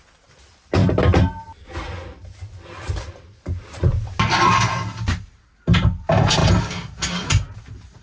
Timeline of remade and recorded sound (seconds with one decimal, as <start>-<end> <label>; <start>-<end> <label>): 0.0-8.0 recorded